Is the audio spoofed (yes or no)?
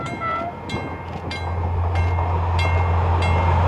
no